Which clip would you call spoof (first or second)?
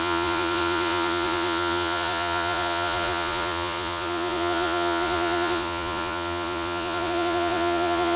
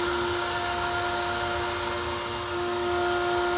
first